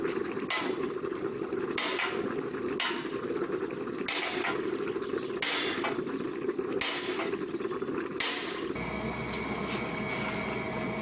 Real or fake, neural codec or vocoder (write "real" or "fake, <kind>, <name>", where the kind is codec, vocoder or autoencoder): real